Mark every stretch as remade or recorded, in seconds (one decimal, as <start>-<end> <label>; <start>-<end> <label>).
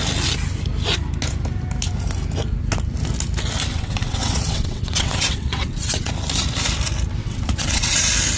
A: 0.0-3.7 recorded; 3.7-6.1 remade; 6.1-7.2 recorded; 7.2-8.0 remade; 8.0-8.4 recorded